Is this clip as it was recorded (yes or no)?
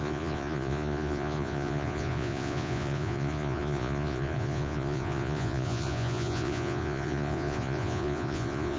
no